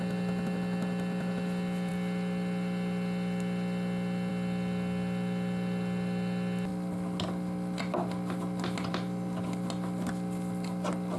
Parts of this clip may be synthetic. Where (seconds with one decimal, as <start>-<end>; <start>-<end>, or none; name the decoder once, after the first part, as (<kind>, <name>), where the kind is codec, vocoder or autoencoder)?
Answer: none